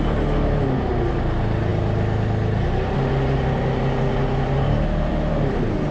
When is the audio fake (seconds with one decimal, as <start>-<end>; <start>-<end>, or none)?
none